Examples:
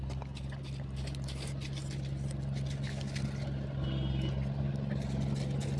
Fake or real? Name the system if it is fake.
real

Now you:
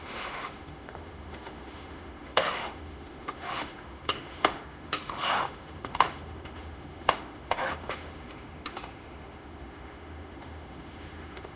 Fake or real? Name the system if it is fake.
fake, autoencoder, DAC-VAE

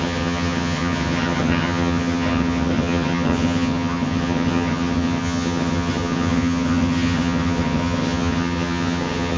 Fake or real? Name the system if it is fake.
fake, vocoder, HiFi-GAN